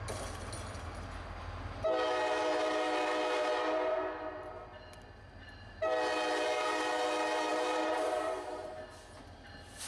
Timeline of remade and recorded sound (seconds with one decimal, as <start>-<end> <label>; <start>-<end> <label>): 0.0-7.5 recorded; 7.5-8.7 remade; 8.7-9.9 recorded